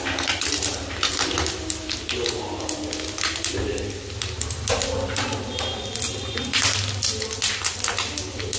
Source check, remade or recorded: recorded